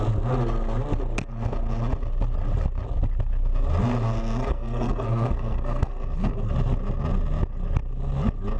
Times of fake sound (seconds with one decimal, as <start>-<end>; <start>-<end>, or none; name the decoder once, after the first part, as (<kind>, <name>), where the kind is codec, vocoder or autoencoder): 4.4-6.5 (codec, SNAC)